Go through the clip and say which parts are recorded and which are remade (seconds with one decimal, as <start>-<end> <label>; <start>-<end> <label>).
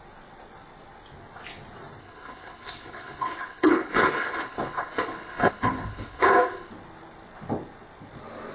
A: 0.0-2.0 recorded; 2.0-6.7 remade; 6.7-8.5 recorded